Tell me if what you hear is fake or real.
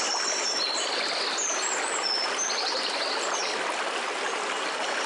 real